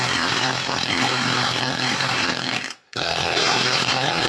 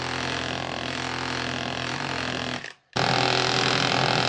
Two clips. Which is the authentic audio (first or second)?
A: second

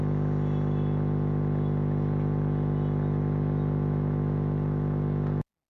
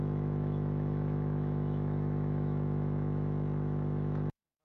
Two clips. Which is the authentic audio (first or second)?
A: first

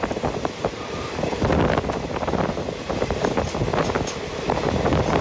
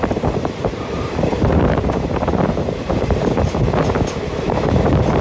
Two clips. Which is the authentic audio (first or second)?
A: first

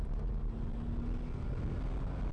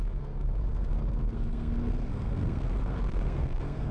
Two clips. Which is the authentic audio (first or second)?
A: first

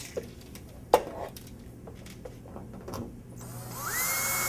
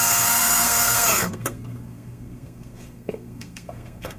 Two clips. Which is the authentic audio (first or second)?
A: first